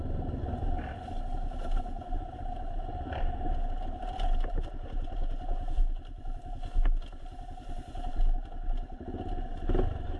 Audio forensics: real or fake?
real